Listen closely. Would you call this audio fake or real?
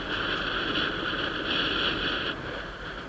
real